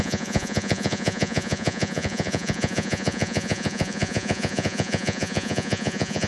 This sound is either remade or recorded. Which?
remade